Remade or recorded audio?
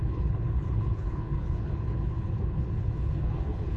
remade